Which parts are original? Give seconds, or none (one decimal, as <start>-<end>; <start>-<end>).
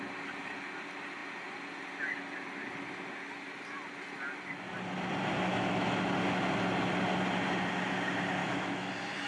0.0-5.5; 6.0-8.4; 8.9-9.3